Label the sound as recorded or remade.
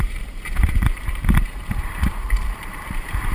remade